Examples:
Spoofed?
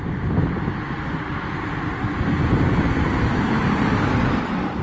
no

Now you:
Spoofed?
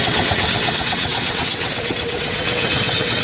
yes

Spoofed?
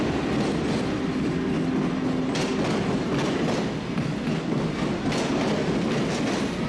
no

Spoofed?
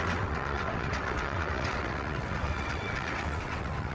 yes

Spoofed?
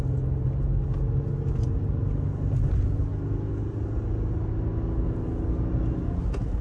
no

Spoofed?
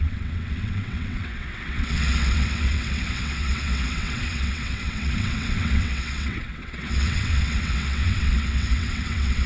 yes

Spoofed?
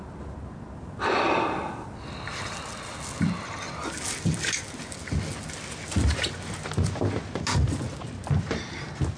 no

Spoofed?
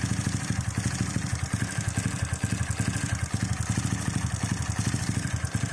no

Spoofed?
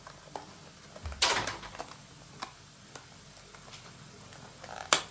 no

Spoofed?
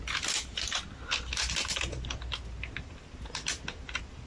no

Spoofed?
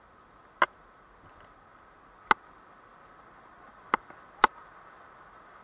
no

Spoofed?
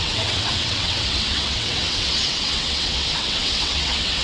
yes